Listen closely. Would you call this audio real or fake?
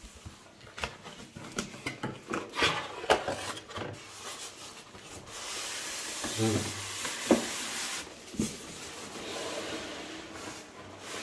real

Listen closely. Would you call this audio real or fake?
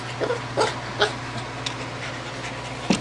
real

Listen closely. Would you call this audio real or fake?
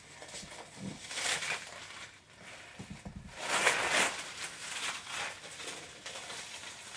real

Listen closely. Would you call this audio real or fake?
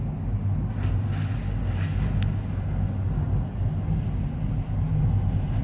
real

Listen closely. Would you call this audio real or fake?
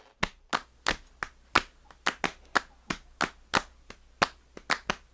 real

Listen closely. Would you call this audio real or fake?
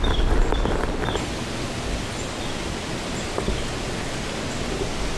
real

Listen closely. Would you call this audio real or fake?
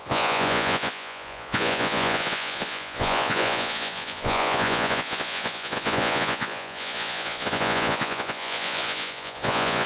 fake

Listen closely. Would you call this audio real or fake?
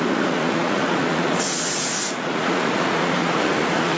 fake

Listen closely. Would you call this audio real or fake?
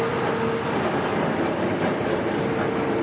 real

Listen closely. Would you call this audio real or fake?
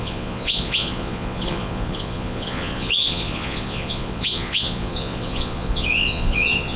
fake